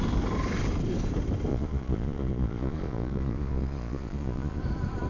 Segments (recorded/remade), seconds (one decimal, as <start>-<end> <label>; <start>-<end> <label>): 0.0-1.5 recorded; 1.5-4.6 remade; 4.6-5.1 recorded